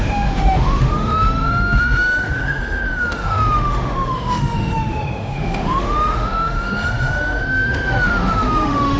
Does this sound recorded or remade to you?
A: remade